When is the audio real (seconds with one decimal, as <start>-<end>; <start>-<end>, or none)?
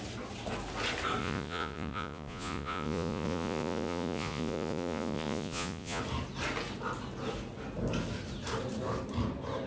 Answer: 0.0-1.2; 6.0-9.7